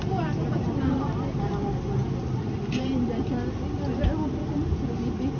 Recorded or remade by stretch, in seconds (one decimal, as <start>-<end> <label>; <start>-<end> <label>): 0.0-2.0 recorded; 2.0-3.5 remade; 3.5-5.4 recorded